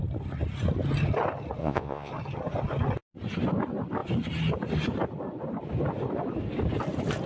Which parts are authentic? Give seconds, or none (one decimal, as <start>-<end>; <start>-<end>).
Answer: 0.0-1.6; 2.1-7.3